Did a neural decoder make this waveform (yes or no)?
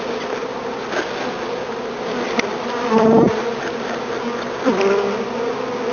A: no